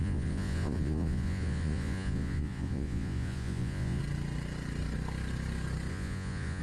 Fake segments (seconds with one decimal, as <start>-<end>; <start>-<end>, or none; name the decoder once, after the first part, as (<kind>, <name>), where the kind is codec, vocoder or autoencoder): 0.0-4.0 (vocoder, Vocos); 5.9-6.6